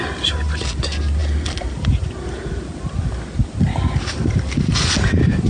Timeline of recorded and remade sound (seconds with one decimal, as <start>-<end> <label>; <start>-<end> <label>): 0.0-5.5 recorded